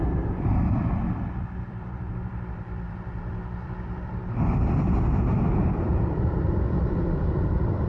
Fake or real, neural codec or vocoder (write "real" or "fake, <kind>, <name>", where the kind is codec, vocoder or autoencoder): fake, vocoder, BigVGAN v2